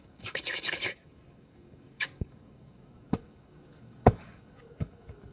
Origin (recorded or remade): remade